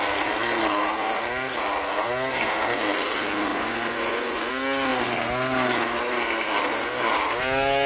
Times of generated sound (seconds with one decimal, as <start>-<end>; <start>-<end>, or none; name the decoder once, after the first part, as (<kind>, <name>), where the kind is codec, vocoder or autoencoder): 3.5-4.5 (vocoder, Vocos)